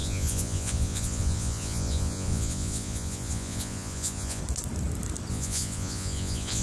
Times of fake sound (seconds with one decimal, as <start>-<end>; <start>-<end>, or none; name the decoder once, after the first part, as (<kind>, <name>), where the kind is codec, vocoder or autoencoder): 0.0-4.4 (vocoder, Vocos); 5.3-6.6